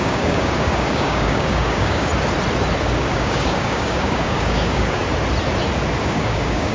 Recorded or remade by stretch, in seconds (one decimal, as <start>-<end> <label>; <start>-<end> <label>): 0.0-2.1 remade; 2.1-2.8 recorded; 2.8-5.0 remade; 5.0-6.0 recorded; 6.0-6.7 remade